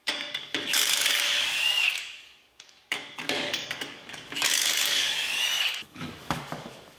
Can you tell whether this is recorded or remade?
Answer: remade